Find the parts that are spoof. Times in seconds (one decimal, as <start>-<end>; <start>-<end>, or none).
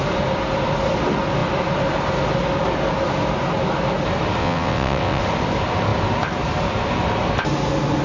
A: 4.4-5.2